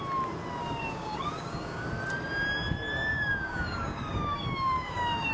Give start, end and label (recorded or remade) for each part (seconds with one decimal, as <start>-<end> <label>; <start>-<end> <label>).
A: 0.0-0.6 recorded; 0.6-1.9 remade; 1.9-3.1 recorded; 3.1-5.3 remade